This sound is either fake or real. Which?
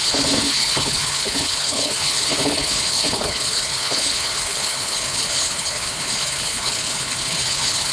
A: fake